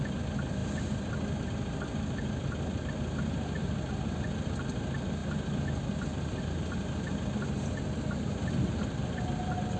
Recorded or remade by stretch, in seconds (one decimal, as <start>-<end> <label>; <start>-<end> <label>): 0.0-9.8 recorded